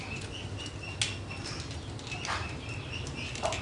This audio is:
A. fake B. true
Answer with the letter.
B